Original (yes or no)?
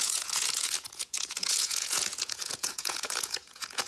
no